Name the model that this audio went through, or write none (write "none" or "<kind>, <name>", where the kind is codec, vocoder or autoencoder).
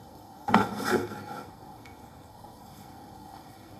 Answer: codec, SNAC